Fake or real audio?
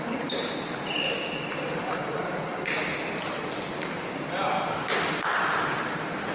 fake